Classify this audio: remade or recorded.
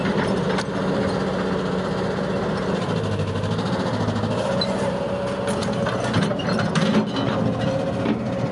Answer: recorded